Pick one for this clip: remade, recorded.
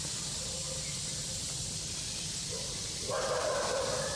remade